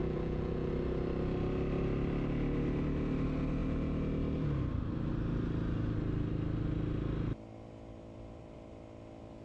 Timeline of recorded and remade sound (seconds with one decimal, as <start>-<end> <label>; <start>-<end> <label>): 0.0-0.7 remade; 0.7-9.4 recorded